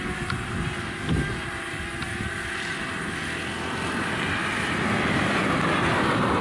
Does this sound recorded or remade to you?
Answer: recorded